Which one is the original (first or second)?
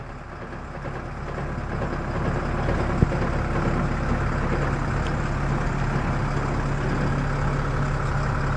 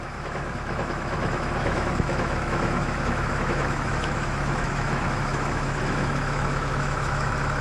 first